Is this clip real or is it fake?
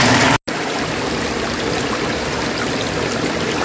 real